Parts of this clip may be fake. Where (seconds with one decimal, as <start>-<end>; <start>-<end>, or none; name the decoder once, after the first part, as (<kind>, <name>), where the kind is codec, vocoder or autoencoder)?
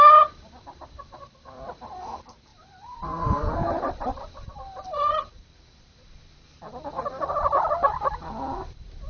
2.5-7.3 (vocoder, BigVGAN v2)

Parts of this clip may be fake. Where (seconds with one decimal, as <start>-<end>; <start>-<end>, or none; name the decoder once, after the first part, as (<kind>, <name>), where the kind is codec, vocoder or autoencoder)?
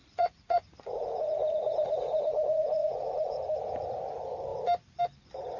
0.0-3.4 (vocoder, Vocos)